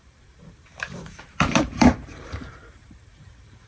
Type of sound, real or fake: fake